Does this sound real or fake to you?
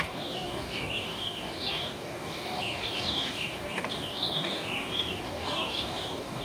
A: fake